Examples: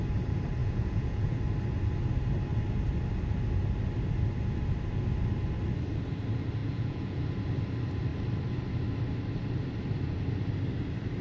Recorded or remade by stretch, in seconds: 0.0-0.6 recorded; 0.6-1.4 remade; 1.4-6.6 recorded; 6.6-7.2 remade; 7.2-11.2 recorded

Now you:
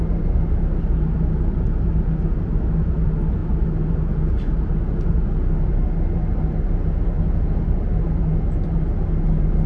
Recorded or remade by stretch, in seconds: 0.0-9.7 recorded

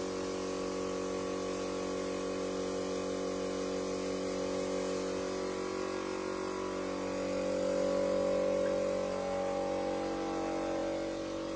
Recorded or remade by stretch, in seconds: 0.0-11.6 recorded

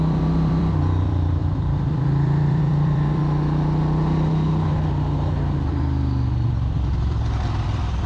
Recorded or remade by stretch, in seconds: 0.0-3.2 remade; 3.2-5.7 recorded; 5.7-8.1 remade

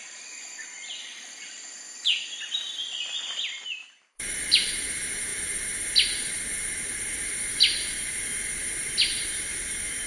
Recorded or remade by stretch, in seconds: 0.0-3.8 recorded; 3.8-4.7 remade; 4.7-10.1 recorded